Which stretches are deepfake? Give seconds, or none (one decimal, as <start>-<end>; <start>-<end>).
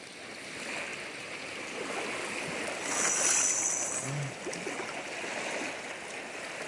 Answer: none